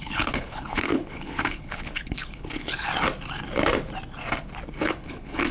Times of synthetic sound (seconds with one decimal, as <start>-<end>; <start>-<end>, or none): 0.0-2.9; 4.8-5.5